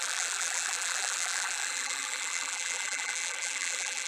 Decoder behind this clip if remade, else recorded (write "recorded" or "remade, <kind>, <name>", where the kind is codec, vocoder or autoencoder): remade, vocoder, BigVGAN v2